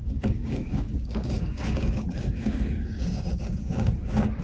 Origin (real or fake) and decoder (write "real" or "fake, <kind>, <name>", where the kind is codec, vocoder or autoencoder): fake, codec, DAC